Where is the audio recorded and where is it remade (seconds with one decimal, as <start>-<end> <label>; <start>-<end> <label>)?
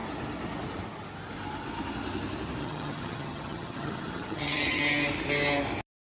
0.0-2.6 recorded; 2.6-4.8 remade; 4.8-6.2 recorded